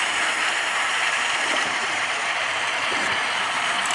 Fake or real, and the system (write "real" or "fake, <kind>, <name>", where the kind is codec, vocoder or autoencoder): fake, vocoder, BigVGAN v2